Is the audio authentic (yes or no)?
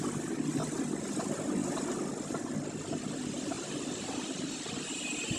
yes